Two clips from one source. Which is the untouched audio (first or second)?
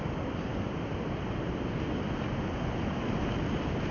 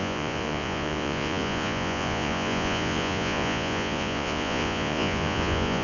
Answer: first